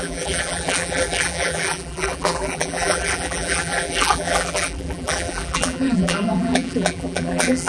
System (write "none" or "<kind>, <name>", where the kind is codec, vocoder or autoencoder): vocoder, BigVGAN v2